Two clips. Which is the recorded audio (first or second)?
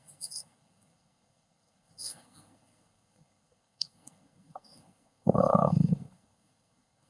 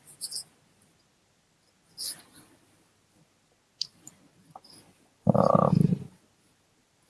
second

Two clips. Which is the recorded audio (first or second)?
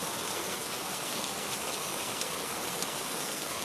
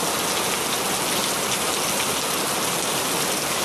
second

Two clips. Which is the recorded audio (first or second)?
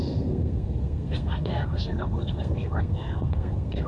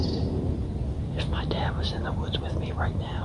second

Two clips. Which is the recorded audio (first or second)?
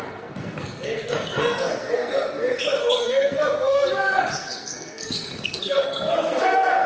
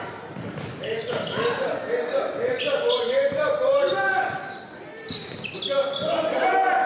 second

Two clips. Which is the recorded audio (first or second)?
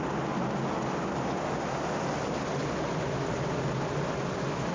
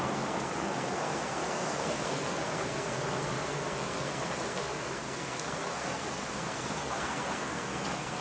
first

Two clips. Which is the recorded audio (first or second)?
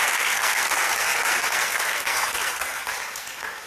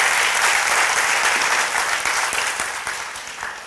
second